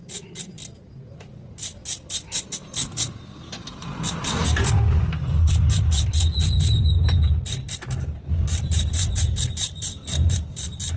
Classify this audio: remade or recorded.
recorded